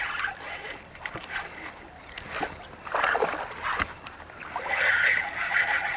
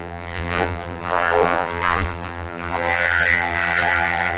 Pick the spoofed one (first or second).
second